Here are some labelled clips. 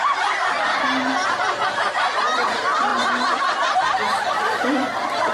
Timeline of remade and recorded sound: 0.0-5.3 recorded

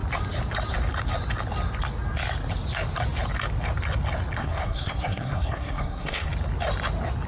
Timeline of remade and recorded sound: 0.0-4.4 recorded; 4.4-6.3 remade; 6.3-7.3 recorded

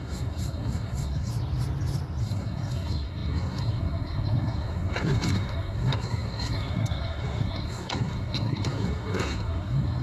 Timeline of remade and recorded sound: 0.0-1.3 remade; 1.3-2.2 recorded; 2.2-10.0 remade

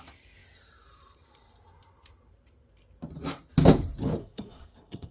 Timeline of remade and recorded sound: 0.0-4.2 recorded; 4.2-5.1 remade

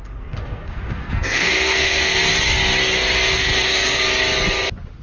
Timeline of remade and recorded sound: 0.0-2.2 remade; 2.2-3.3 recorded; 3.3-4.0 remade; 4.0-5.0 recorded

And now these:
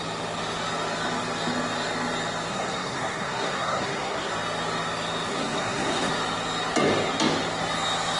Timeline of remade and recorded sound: 0.0-2.5 recorded; 2.5-4.3 remade; 4.3-5.3 recorded; 5.3-6.1 remade; 6.1-8.2 recorded

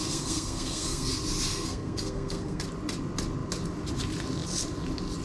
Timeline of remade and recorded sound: 0.0-1.1 remade; 1.1-1.5 recorded; 1.5-2.6 remade; 2.6-5.2 recorded